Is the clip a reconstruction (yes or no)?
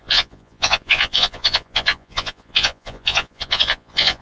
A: yes